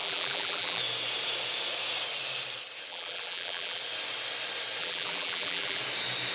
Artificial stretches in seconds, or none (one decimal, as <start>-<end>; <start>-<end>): 0.0-0.8; 2.9-3.8; 4.8-5.8